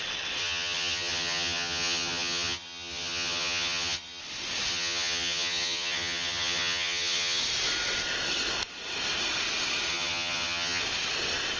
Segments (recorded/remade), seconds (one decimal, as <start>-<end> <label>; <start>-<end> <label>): 0.0-0.4 recorded; 0.4-4.2 remade; 4.2-4.7 recorded; 4.7-7.4 remade; 7.4-9.9 recorded; 9.9-10.8 remade; 10.8-11.6 recorded